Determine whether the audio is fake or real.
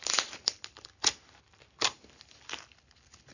real